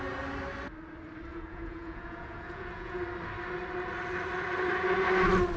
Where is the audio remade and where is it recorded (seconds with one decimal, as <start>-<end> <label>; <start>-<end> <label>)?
0.0-1.3 recorded; 1.3-3.0 remade; 3.0-5.6 recorded